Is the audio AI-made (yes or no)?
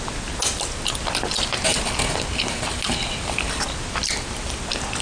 no